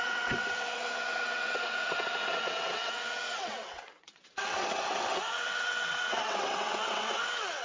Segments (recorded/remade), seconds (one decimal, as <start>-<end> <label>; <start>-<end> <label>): 0.0-7.6 remade